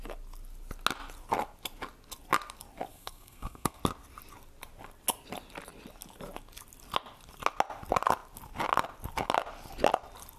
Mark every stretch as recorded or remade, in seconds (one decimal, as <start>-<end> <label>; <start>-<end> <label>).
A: 0.0-2.9 recorded; 2.9-3.8 remade; 3.8-10.4 recorded